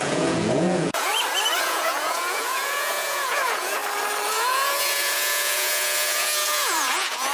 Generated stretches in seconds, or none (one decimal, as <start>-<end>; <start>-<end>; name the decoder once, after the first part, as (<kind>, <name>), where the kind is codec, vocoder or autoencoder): 0.0-1.1 (vocoder, Vocos); 1.6-3.8; 4.3-7.3